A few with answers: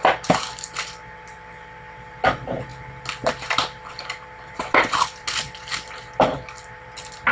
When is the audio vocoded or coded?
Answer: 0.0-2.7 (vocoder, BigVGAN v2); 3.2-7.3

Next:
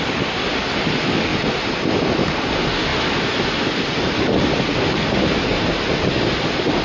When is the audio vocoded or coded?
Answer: 2.9-3.4 (vocoder, BigVGAN v2)

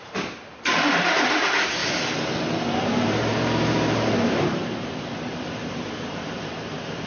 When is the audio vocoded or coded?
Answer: 0.0-1.8 (vocoder, BigVGAN v2); 2.8-7.1